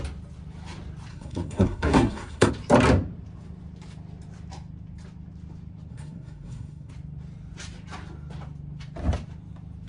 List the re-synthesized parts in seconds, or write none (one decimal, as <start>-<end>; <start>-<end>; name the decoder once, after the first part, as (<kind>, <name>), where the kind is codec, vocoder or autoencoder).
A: 1.1-2.5 (codec, SNAC); 5.9-6.9